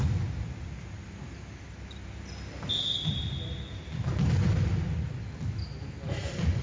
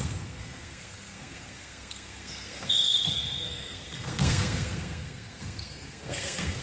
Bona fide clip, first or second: first